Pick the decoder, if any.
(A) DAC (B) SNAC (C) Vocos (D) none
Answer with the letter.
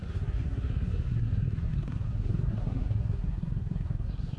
B